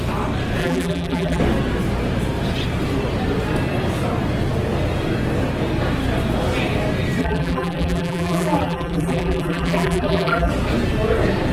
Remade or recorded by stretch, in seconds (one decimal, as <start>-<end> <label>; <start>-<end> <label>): 0.0-0.6 recorded; 0.6-1.4 remade; 1.4-7.2 recorded; 7.2-10.5 remade; 10.5-11.5 recorded